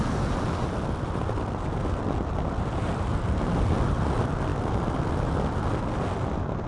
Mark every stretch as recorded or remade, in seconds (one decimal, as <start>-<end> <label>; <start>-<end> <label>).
0.0-6.7 recorded